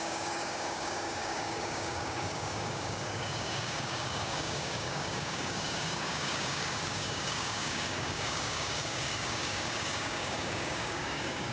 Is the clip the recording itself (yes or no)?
no